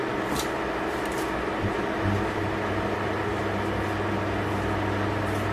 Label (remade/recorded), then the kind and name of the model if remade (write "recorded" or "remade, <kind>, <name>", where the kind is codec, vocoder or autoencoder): recorded